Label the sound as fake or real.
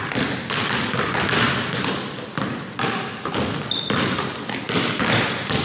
real